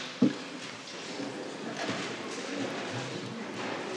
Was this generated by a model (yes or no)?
no